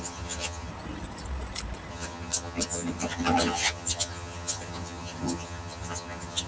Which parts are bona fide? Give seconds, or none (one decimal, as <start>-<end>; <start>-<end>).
0.7-1.9